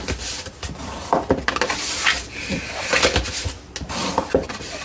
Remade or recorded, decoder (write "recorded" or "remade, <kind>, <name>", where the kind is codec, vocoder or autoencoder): recorded